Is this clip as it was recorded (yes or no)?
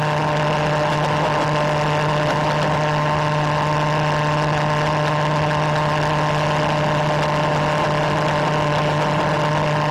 yes